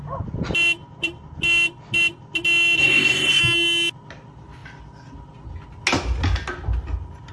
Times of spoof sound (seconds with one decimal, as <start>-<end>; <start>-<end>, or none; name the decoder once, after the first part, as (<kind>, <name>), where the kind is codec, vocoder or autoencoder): 2.8-3.4 (codec, SNAC)

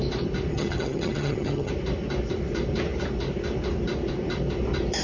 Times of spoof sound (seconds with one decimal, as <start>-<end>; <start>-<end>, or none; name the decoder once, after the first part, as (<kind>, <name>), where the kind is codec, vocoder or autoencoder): 0.5-1.7 (vocoder, HiFi-GAN)

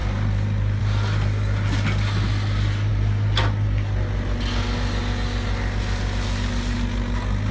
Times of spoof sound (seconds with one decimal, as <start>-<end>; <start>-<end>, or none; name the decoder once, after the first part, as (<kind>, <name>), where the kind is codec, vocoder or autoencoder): none